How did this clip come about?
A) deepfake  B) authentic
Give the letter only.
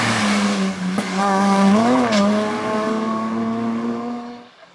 A